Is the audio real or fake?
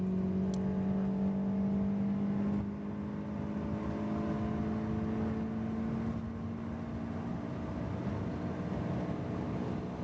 real